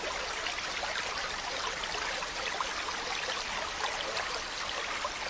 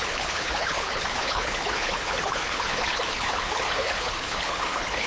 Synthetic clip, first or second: second